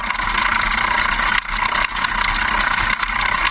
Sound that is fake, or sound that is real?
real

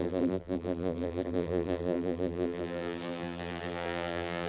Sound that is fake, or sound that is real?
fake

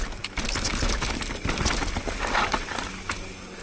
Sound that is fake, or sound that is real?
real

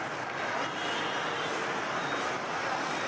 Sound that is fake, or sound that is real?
real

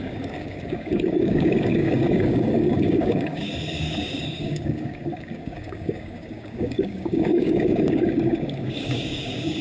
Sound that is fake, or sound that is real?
fake